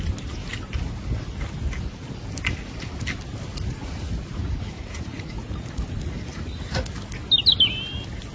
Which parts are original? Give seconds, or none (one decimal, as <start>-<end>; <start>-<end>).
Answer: 0.0-3.5; 6.8-8.3